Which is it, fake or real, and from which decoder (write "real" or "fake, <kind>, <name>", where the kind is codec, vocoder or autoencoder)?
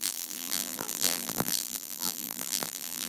fake, vocoder, BigVGAN v2